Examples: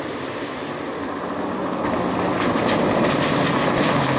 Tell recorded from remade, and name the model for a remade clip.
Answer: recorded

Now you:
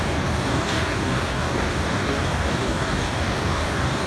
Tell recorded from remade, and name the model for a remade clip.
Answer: remade, codec, DAC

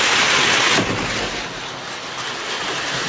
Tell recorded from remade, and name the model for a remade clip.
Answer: recorded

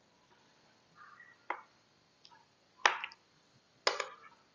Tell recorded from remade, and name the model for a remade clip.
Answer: recorded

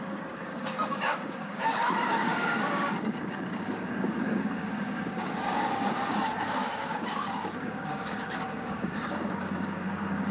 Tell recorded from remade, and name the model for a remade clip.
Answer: remade, codec, DAC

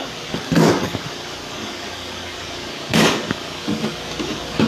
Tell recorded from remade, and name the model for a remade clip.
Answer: remade, codec, DAC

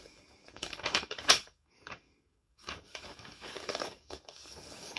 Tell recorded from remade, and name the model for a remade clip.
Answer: remade, codec, DAC